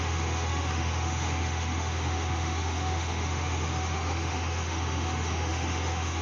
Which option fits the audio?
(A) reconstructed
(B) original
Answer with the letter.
A